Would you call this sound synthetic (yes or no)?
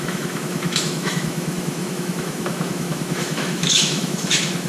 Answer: yes